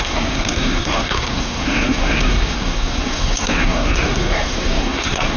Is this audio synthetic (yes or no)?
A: yes